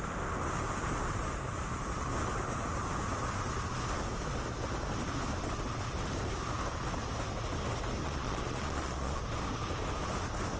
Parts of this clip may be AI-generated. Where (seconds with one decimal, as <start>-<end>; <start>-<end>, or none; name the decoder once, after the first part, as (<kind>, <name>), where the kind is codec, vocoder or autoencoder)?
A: 8.0-9.2 (vocoder, Vocos)